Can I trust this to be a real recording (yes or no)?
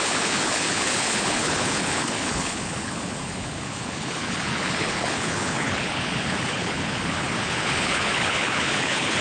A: no